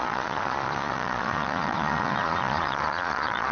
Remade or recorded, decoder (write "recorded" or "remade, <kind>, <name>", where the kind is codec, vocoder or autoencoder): remade, vocoder, Vocos